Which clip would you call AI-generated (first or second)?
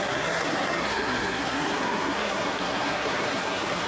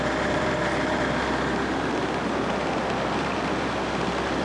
first